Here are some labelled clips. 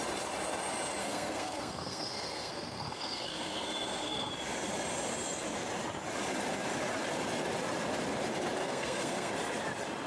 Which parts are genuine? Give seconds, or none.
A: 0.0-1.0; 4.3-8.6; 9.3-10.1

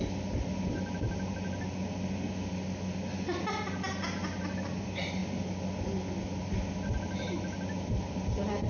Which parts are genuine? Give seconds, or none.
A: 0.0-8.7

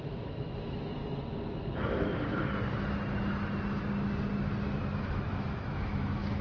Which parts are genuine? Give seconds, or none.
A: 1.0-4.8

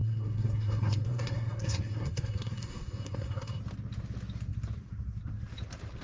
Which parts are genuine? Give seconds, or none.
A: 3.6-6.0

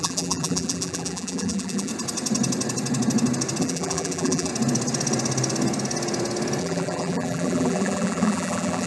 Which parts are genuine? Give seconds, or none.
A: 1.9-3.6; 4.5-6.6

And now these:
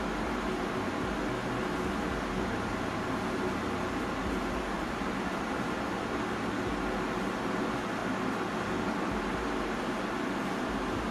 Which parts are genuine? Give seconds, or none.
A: 0.0-11.1